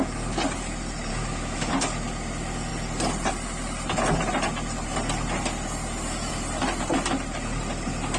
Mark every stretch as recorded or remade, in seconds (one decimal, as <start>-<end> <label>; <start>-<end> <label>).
0.0-1.1 recorded; 1.1-1.7 remade; 1.7-8.2 recorded